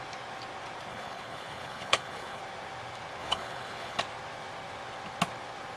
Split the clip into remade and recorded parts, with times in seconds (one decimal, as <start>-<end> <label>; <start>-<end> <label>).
0.0-0.9 recorded; 0.9-2.4 remade; 2.4-3.2 recorded; 3.2-4.0 remade; 4.0-5.8 recorded

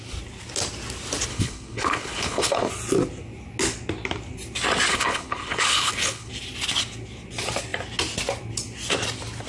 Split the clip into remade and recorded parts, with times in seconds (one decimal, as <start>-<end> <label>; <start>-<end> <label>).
0.0-1.3 recorded; 1.3-2.7 remade; 2.7-4.9 recorded; 4.9-6.3 remade; 6.3-9.5 recorded

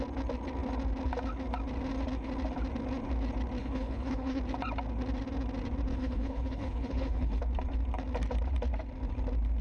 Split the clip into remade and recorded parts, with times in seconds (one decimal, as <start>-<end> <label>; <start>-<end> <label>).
0.0-3.6 recorded; 3.6-4.4 remade; 4.4-5.9 recorded; 5.9-7.4 remade; 7.4-9.6 recorded

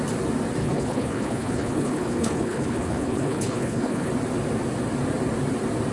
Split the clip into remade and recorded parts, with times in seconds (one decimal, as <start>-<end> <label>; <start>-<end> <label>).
0.0-0.6 recorded; 0.6-4.1 remade; 4.1-5.9 recorded

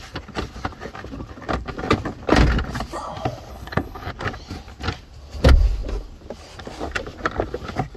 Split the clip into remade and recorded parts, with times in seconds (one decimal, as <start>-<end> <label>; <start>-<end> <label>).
0.0-3.5 recorded; 3.5-4.1 remade; 4.1-8.0 recorded

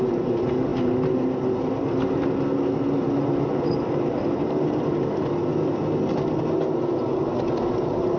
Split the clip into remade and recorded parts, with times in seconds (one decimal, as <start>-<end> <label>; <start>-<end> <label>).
0.0-8.2 recorded

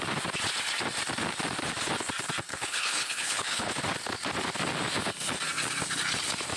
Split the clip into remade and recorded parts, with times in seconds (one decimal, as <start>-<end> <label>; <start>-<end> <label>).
0.0-2.5 recorded; 2.5-3.8 remade; 3.8-6.6 recorded

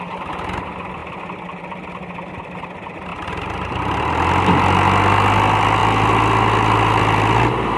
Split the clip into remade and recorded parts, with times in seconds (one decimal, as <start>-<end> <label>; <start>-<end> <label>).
0.0-7.8 recorded